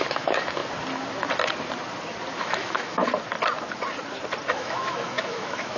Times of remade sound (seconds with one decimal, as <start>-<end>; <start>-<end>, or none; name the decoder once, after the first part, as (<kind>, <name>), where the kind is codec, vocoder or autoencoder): 0.0-0.6 (autoencoder, DAC-VAE); 2.4-3.0; 4.5-5.8